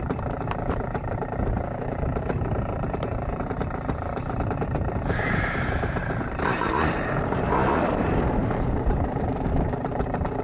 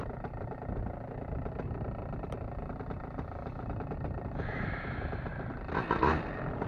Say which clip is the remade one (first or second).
first